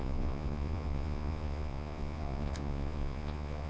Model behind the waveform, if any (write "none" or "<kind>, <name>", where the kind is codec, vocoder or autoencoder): vocoder, Vocos